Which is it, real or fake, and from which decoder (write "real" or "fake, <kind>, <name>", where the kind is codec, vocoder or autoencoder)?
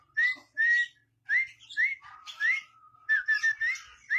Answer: real